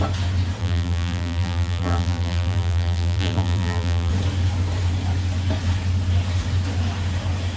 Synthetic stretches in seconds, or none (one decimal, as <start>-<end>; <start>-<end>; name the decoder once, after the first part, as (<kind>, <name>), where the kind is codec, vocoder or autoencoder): 0.6-4.1 (vocoder, BigVGAN v2)